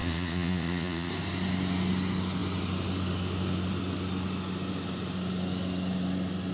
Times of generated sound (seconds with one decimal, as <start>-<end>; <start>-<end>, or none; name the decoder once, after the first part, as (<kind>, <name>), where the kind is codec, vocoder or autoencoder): 0.0-1.1 (vocoder, Vocos)